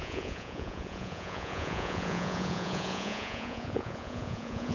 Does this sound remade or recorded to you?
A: remade